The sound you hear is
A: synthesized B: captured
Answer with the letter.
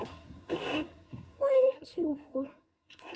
A